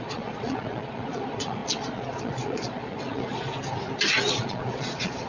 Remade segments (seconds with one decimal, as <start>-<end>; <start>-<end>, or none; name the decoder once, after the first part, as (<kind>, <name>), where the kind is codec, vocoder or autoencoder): 0.0-3.5 (vocoder, Vocos); 4.4-5.3